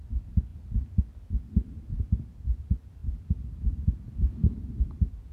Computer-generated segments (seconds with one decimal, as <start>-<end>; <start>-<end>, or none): none